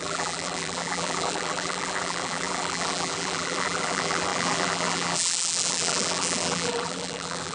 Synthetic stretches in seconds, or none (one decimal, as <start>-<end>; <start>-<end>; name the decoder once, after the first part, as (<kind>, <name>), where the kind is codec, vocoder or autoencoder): 0.0-7.5 (vocoder, BigVGAN v2)